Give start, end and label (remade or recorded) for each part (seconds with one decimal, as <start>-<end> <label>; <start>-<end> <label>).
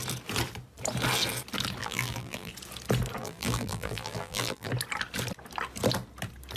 0.0-1.8 recorded; 1.8-2.5 remade; 2.5-3.2 recorded; 3.2-4.7 remade; 4.7-6.6 recorded